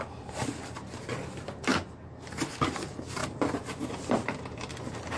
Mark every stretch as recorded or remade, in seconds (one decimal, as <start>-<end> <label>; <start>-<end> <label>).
0.0-5.2 recorded

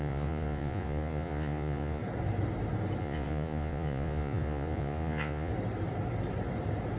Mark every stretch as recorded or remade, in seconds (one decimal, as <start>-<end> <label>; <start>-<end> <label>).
0.0-2.0 remade; 2.0-3.0 recorded; 3.0-5.5 remade; 5.5-7.0 recorded

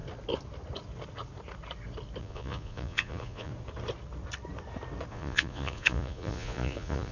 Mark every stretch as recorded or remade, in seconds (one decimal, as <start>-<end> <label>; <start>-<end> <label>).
0.0-2.2 recorded; 2.2-3.5 remade; 3.5-5.1 recorded; 5.1-7.1 remade

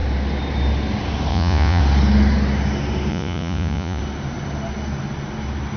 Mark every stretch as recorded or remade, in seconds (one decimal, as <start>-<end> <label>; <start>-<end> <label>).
0.0-1.3 recorded; 1.3-1.8 remade; 1.8-3.1 recorded; 3.1-4.0 remade; 4.0-5.8 recorded

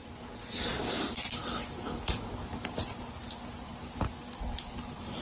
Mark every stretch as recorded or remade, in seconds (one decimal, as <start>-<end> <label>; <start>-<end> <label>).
0.0-5.2 recorded

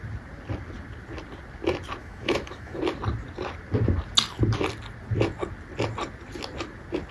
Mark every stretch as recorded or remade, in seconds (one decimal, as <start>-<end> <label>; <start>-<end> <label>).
0.0-2.0 recorded; 2.0-2.8 remade; 2.8-7.1 recorded